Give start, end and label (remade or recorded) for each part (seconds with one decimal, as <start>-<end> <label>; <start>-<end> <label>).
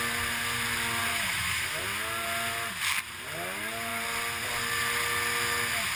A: 0.0-1.1 recorded; 1.1-1.8 remade; 1.8-6.0 recorded